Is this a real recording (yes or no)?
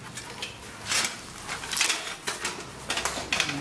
yes